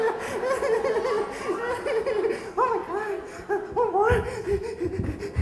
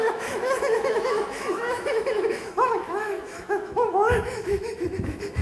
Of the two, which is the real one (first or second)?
first